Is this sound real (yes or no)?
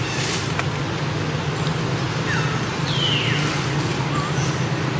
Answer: yes